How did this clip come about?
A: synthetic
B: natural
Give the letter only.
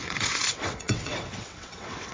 A